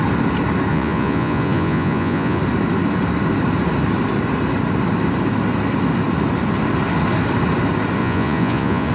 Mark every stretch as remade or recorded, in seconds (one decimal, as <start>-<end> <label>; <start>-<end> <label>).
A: 0.0-0.7 recorded; 0.7-2.4 remade; 2.4-8.0 recorded; 8.0-8.9 remade